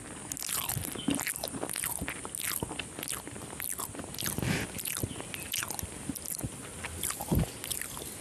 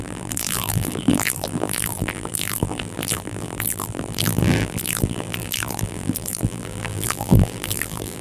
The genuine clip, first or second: first